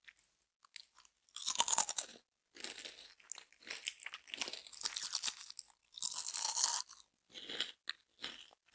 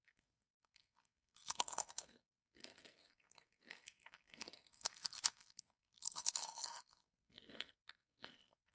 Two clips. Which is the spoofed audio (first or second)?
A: second